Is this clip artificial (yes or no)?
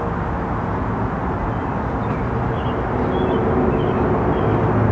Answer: no